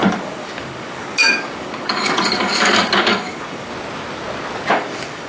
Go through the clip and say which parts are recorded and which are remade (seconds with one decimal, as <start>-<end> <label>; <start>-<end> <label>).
0.0-3.7 remade; 3.7-4.7 recorded; 4.7-5.3 remade